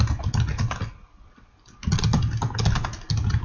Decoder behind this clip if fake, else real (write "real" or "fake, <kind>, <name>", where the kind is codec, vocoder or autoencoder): real